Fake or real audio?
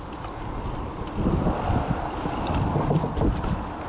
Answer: real